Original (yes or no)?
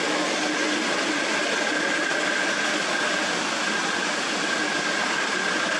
yes